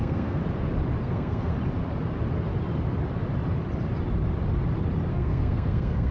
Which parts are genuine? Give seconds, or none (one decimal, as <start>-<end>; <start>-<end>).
0.4-1.0; 1.5-5.1